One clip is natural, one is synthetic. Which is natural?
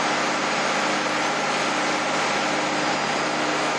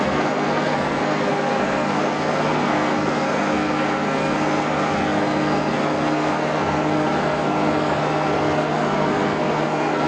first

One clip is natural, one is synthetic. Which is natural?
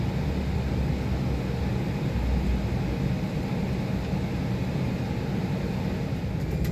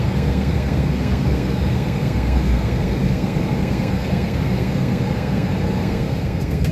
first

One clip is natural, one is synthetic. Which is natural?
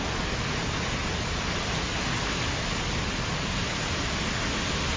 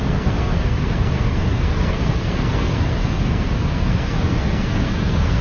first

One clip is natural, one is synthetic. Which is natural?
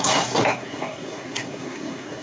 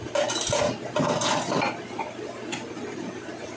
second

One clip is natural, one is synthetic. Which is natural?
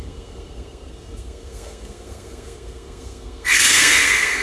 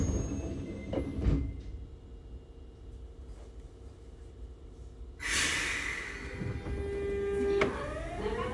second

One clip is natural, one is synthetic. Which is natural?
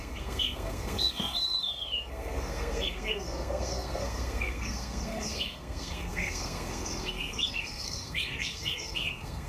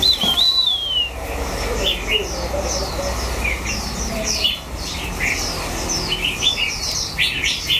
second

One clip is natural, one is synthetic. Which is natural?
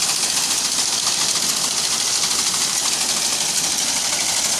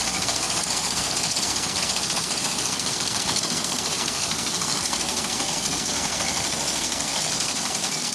first